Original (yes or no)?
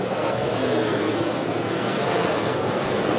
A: no